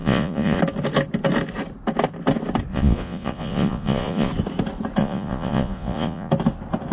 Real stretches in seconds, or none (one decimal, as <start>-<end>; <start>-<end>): 0.6-2.7; 4.3-5.0; 6.3-6.9